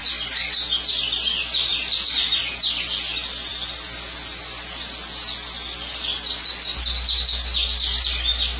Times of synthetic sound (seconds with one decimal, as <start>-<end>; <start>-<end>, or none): none